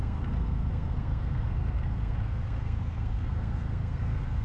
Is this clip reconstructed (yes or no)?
yes